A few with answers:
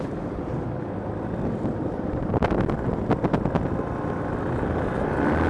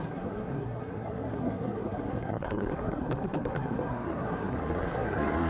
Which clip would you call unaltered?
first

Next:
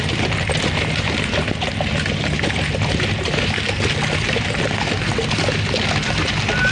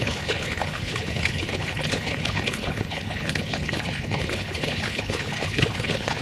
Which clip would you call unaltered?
first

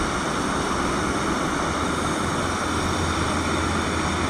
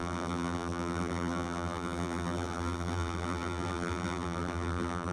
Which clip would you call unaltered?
first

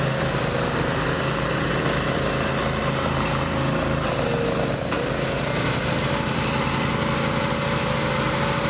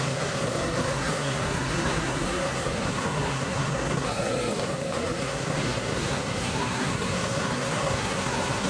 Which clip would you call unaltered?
first